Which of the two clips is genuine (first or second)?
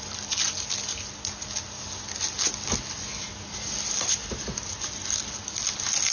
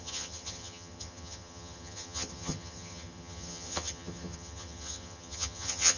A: first